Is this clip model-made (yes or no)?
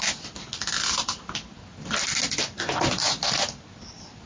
no